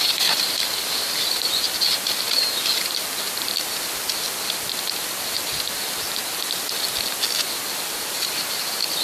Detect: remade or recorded recorded